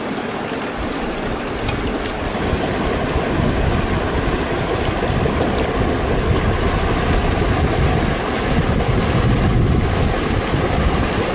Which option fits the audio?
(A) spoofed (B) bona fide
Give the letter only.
B